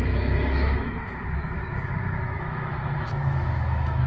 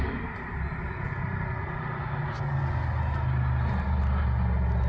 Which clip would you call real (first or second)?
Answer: second